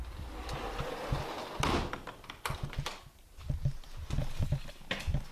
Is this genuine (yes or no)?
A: yes